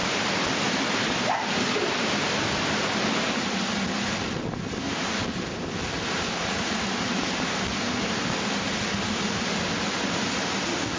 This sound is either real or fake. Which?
real